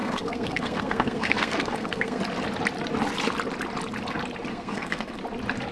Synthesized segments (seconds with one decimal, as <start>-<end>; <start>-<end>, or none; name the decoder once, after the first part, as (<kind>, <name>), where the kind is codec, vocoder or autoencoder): 0.0-2.2 (codec, SNAC); 4.5-5.2